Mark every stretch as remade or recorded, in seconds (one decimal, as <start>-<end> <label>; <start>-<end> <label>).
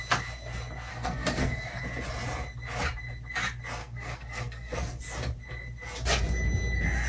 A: 0.0-0.9 recorded; 0.9-1.8 remade; 1.8-3.8 recorded; 3.8-5.0 remade; 5.0-7.1 recorded